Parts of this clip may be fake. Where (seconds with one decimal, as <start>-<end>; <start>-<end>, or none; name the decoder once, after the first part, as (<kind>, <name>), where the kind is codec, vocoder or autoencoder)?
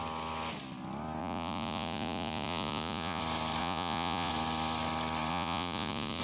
1.2-3.2 (vocoder, Vocos); 3.6-4.3; 5.3-6.2